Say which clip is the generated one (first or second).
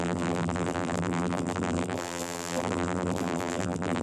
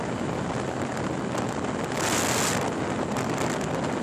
first